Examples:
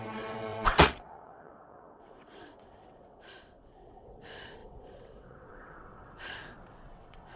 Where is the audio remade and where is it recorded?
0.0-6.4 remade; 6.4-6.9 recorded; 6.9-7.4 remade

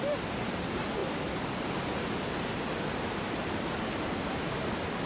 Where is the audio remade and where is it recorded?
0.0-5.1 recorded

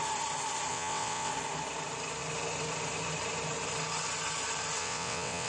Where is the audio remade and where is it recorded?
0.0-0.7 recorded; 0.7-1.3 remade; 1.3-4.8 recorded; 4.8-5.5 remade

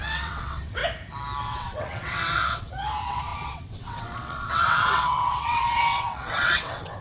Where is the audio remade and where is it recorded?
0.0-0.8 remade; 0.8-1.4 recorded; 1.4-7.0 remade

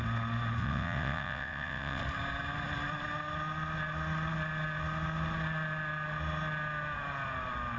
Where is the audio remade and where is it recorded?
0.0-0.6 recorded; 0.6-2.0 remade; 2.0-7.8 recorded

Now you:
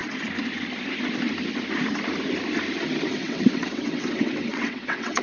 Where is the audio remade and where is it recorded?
0.0-3.1 recorded; 3.1-5.2 remade

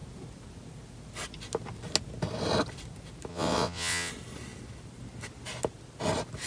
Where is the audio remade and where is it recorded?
0.0-3.3 recorded; 3.3-4.1 remade; 4.1-6.5 recorded